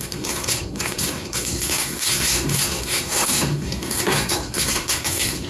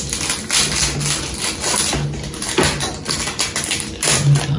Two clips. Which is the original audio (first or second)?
second